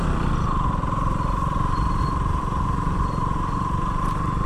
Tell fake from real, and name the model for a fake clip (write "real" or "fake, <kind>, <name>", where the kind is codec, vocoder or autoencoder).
fake, vocoder, BigVGAN v2